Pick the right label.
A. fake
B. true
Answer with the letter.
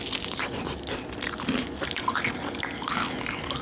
B